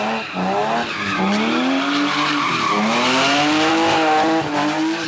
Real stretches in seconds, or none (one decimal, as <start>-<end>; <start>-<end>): 0.0-5.1